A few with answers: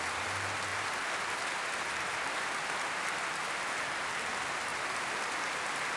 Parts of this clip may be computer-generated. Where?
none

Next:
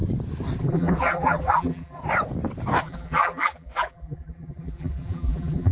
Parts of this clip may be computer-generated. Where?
0.6-2.0; 2.8-5.7

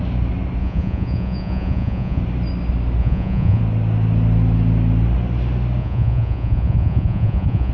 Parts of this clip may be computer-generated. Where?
0.6-2.2; 3.0-3.6; 5.8-7.7

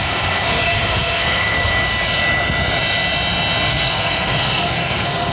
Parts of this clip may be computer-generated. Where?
0.0-1.7; 3.7-5.3